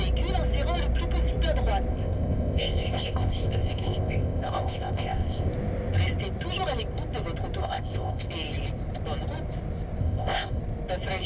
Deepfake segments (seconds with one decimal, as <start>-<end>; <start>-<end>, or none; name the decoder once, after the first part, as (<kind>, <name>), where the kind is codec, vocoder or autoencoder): 1.9-5.5 (codec, ZipCodec); 7.6-8.3; 10.0-10.6